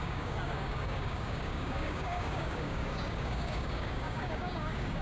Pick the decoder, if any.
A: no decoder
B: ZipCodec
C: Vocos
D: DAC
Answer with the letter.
D